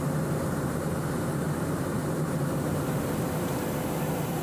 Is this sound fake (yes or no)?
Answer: yes